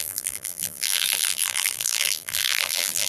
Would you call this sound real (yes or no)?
no